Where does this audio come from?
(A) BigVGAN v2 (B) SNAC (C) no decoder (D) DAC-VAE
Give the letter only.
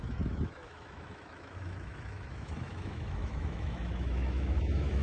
D